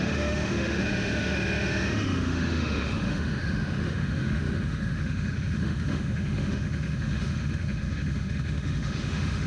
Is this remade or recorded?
remade